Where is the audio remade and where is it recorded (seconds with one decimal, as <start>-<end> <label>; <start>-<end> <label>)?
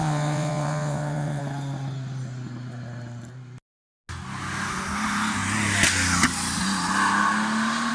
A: 0.0-1.4 remade; 1.4-7.9 recorded